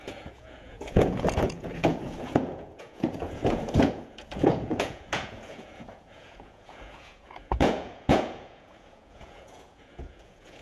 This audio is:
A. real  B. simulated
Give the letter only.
B